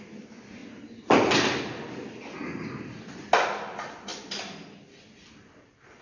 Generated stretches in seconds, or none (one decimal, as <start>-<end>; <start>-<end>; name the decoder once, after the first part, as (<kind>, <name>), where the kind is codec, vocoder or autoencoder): none

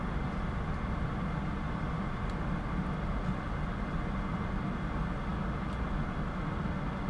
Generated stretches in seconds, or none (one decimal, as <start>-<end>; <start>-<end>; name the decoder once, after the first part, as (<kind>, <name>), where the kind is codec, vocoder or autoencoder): none

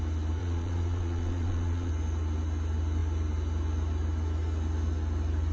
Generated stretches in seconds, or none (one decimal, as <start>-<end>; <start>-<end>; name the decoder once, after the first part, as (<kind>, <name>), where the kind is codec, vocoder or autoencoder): 0.4-1.9 (vocoder, Vocos)

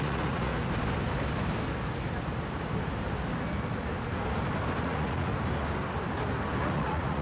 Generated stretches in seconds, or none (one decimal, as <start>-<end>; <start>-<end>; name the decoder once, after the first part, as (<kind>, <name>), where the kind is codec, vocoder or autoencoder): 0.0-0.5 (vocoder, Vocos); 4.8-5.3; 6.6-7.2

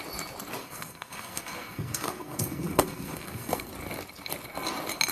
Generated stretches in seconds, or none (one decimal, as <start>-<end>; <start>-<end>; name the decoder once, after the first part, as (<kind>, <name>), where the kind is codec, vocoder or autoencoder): 0.6-3.7 (codec, SNAC)